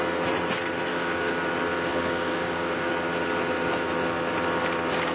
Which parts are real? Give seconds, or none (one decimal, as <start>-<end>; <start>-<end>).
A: 0.0-0.9; 1.4-1.9; 2.9-5.1